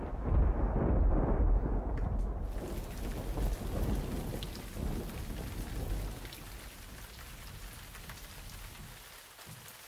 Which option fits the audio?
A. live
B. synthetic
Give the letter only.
A